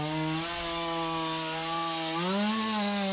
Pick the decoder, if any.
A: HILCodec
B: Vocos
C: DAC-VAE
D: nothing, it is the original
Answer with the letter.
D